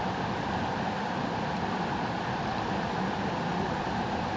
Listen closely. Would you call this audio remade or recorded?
recorded